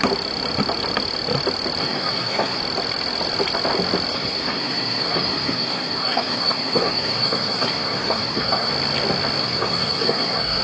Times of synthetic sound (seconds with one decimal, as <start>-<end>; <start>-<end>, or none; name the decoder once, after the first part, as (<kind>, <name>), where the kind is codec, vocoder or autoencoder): 1.8-2.6 (codec, SNAC); 4.1-8.7; 9.4-10.6